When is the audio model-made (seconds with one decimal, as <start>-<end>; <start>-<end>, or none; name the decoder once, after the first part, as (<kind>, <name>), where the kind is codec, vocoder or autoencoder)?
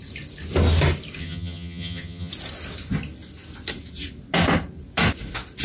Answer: 1.2-2.3 (vocoder, HiFi-GAN)